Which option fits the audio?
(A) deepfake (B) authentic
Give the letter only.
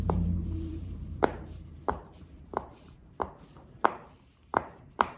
A